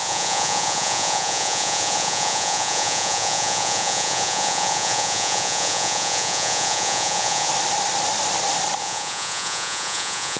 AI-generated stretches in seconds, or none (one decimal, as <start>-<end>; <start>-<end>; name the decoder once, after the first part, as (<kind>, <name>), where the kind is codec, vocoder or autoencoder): 0.0-7.5 (vocoder, Vocos); 8.8-10.4